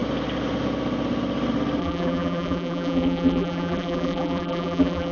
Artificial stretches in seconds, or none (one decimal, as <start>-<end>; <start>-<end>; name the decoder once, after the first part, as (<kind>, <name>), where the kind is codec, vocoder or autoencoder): 1.8-5.1 (vocoder, BigVGAN v2)